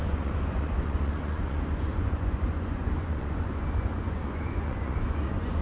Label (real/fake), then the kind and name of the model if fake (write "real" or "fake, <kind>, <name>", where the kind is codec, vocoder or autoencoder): fake, vocoder, Vocos